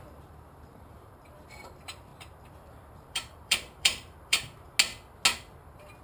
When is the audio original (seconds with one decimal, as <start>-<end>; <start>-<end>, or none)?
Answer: 4.7-5.6